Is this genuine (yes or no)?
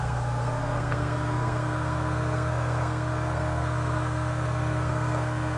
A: no